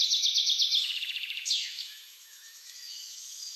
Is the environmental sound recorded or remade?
remade